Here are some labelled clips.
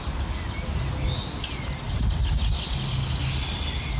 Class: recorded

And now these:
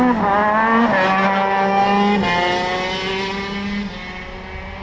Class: recorded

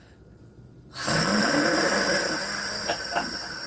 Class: recorded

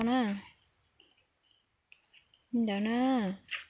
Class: recorded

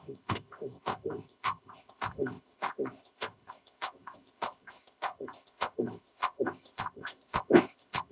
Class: remade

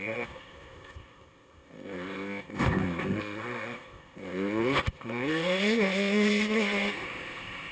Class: remade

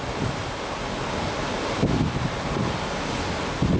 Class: recorded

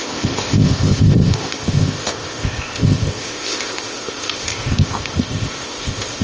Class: remade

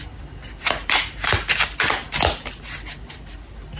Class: recorded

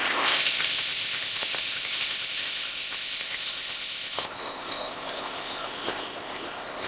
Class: remade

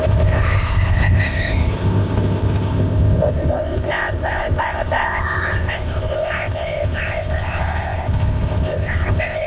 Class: remade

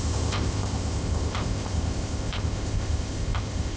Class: remade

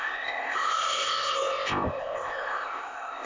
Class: remade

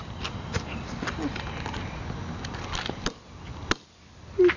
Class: recorded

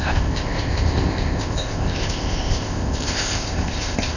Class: remade